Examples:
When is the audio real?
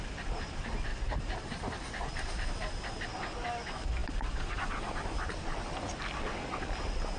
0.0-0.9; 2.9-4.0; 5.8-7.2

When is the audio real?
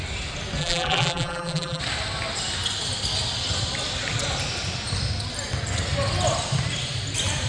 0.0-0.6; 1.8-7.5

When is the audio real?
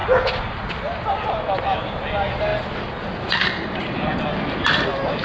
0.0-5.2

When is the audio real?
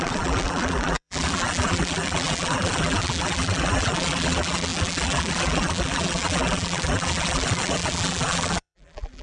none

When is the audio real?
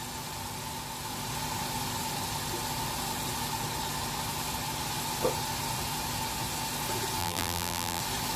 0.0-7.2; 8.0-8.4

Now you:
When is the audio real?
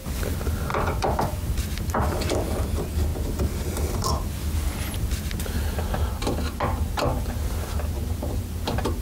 0.0-9.0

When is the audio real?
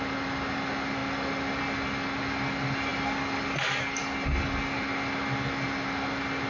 0.0-6.5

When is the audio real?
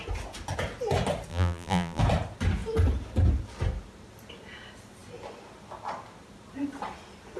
0.0-1.3; 2.0-7.4